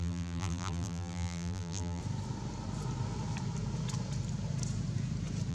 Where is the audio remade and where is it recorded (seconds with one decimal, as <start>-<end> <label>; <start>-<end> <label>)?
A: 0.0-2.0 remade; 2.0-5.5 recorded